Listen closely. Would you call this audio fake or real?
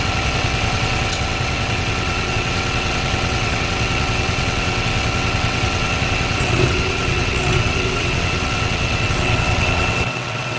fake